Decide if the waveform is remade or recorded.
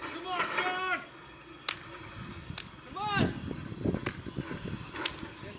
recorded